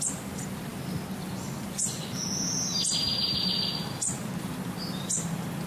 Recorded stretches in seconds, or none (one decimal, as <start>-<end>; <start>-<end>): 0.0-5.7